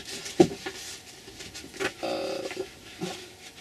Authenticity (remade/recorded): recorded